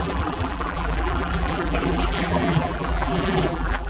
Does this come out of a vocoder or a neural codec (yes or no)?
yes